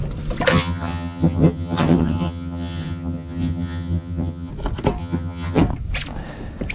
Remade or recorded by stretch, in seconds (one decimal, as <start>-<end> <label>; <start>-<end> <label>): 0.0-0.5 recorded; 0.5-4.5 remade; 4.5-5.0 recorded; 5.0-5.6 remade; 5.6-6.7 recorded